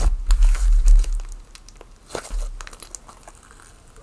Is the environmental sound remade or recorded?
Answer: recorded